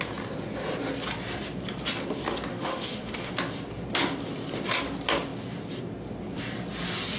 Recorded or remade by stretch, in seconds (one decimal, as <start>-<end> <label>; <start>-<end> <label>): 0.0-2.5 recorded; 2.5-3.3 remade; 3.3-7.2 recorded